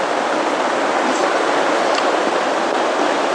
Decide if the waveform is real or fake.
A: fake